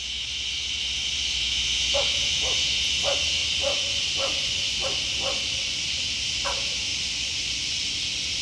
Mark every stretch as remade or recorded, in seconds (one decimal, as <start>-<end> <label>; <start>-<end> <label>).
0.0-3.4 recorded; 3.4-5.8 remade; 5.8-6.9 recorded; 6.9-7.9 remade; 7.9-8.4 recorded